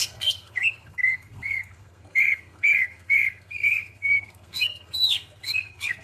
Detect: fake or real fake